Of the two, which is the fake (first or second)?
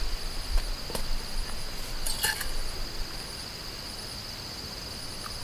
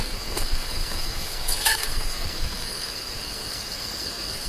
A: second